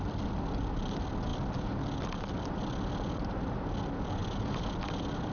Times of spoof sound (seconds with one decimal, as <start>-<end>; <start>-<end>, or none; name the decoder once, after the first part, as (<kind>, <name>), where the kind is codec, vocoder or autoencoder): none